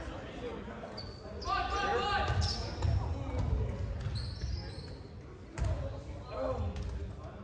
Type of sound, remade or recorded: recorded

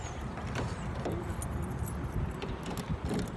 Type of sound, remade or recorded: recorded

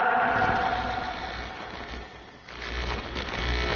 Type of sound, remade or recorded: recorded